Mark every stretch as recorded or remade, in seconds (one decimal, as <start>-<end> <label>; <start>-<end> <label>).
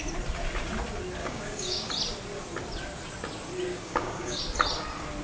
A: 0.0-1.2 recorded; 1.2-1.9 remade; 1.9-3.7 recorded; 3.7-4.4 remade; 4.4-5.2 recorded